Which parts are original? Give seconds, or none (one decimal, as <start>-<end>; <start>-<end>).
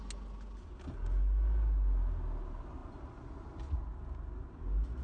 0.0-5.0